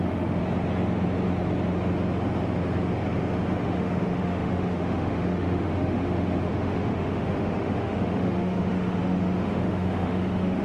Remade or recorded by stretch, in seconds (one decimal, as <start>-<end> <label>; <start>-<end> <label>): 0.0-0.4 remade; 0.4-3.6 recorded; 3.6-10.6 remade

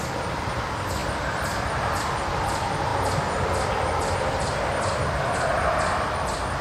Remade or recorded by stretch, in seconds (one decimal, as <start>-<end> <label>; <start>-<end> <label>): 0.0-2.9 remade; 2.9-4.3 recorded; 4.3-5.0 remade; 5.0-5.5 recorded; 5.5-6.6 remade

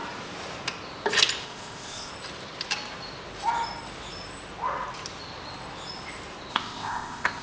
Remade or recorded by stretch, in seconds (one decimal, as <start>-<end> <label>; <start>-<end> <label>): 0.0-1.4 recorded; 1.4-2.1 remade; 2.1-6.5 recorded; 6.5-7.4 remade

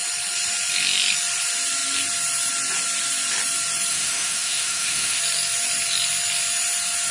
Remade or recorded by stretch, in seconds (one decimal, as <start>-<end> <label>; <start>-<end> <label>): 0.0-3.9 recorded; 3.9-5.2 remade; 5.2-7.1 recorded

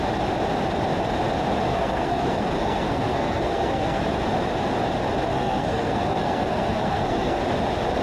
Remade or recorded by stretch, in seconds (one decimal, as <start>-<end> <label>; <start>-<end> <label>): 0.0-1.7 recorded; 1.7-4.0 remade; 4.0-5.3 recorded; 5.3-7.4 remade; 7.4-8.0 recorded